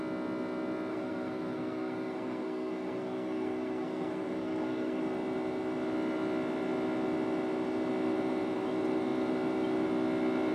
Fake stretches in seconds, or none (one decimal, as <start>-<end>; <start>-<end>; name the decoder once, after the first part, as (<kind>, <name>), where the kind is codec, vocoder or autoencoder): 0.9-5.0 (codec, SNAC)